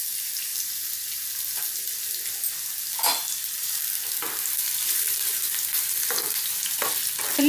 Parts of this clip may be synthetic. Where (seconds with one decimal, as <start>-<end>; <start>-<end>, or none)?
4.8-5.9